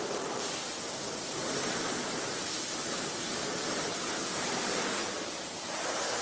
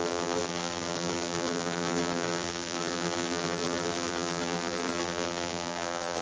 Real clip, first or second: first